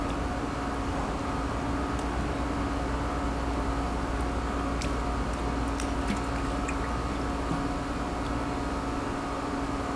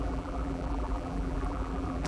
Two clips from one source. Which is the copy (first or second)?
second